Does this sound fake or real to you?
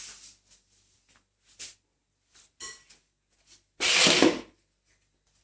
real